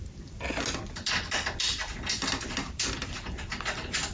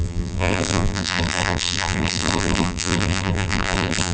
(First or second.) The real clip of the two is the first